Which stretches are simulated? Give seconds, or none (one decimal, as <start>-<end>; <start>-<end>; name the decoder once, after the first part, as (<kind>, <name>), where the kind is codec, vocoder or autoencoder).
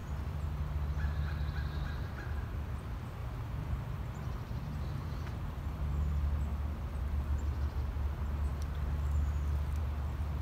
3.2-5.8 (vocoder, BigVGAN v2)